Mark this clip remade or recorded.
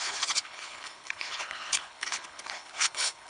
remade